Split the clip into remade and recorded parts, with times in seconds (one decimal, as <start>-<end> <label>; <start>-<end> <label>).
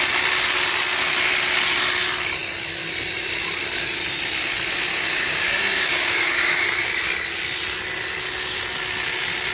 0.0-4.9 recorded; 4.9-6.6 remade; 6.6-9.5 recorded